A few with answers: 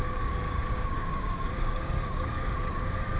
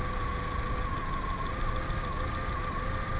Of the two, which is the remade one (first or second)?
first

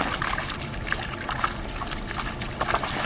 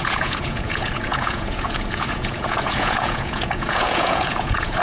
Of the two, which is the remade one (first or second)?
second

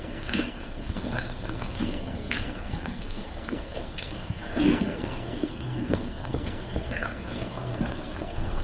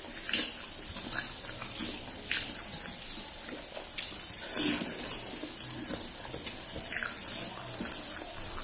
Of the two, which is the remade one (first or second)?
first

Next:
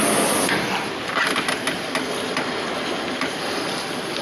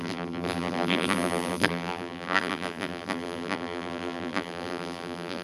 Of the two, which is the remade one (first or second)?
second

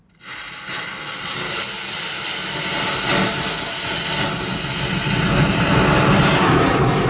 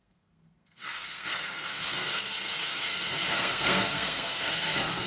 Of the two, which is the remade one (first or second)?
second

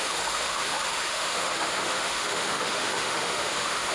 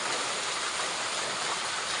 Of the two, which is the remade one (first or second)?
first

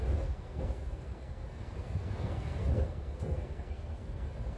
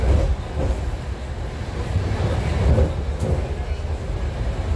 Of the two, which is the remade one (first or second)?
first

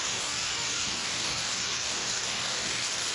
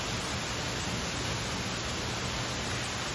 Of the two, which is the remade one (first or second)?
first